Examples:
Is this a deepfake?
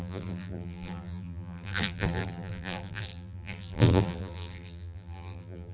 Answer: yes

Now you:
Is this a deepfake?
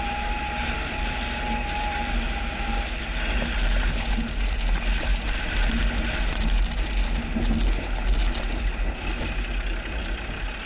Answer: no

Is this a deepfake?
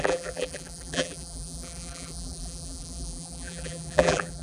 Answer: yes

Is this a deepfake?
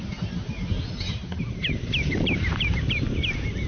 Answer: yes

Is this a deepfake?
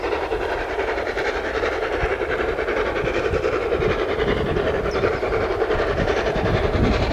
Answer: yes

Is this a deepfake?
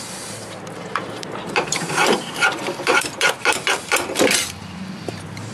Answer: yes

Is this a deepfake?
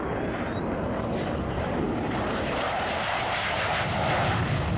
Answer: yes